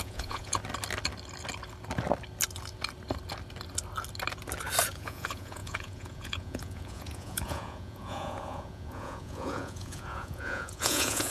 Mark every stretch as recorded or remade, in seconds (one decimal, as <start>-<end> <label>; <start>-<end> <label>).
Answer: 0.0-0.6 remade; 0.6-4.9 recorded; 4.9-11.3 remade